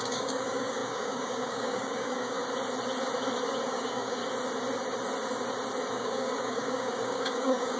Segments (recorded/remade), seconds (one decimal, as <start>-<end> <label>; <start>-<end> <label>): 0.0-2.4 remade; 2.4-3.7 recorded; 3.7-4.2 remade; 4.2-5.9 recorded; 5.9-7.8 remade